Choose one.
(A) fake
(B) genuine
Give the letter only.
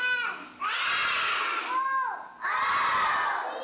B